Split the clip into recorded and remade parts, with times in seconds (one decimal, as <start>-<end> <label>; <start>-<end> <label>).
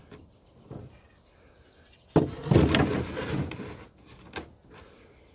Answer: 0.0-5.3 recorded